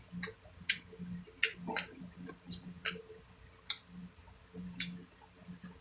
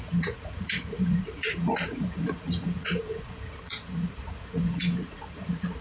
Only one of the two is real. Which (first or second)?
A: first